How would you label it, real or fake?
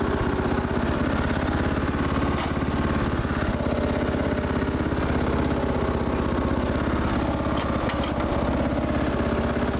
real